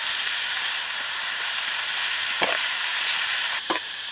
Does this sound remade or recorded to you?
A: remade